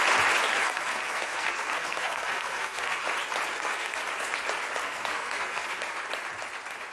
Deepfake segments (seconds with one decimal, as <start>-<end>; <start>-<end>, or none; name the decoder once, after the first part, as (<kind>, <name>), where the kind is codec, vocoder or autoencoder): 0.5-3.0 (codec, SNAC); 3.5-4.0; 4.8-5.8